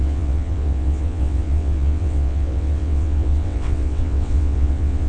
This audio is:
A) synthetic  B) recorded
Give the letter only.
A